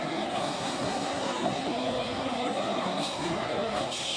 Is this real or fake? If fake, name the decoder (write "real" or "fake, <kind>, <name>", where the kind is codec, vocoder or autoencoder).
fake, codec, SNAC